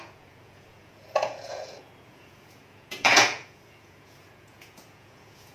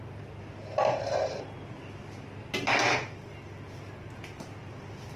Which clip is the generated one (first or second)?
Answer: first